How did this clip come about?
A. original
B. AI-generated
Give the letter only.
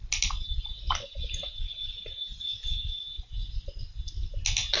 A